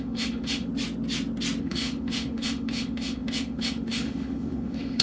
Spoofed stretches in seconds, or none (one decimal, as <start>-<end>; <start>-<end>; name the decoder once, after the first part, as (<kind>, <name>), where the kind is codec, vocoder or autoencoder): 0.0-0.7 (autoencoder, DAC-VAE); 1.6-5.0